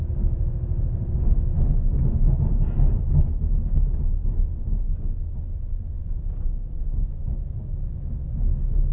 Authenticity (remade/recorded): recorded